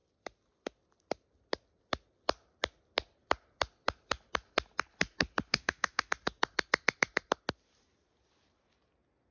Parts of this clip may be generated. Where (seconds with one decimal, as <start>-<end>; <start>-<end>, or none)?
5.5-6.1